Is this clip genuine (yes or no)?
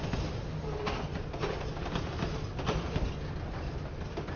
yes